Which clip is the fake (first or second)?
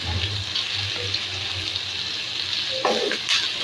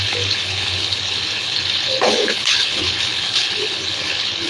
second